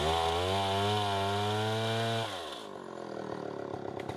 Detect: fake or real real